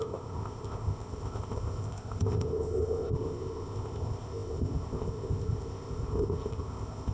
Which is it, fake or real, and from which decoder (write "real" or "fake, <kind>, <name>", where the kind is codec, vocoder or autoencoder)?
fake, codec, ZipCodec